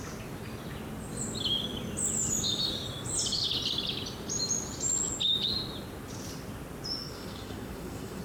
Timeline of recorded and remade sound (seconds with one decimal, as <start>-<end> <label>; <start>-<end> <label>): 0.0-7.0 recorded; 7.0-8.2 remade